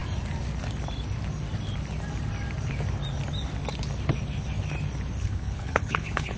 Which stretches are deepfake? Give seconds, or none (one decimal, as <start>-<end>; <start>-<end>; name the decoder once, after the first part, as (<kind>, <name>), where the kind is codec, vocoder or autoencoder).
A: 5.2-6.4 (codec, HILCodec)